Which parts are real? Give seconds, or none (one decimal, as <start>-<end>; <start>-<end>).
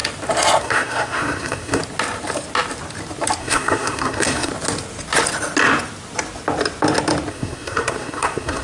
0.0-0.6; 1.8-3.4; 4.5-7.3